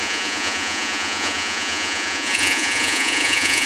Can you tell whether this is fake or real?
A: fake